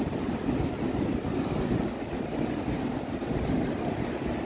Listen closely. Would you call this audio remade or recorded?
recorded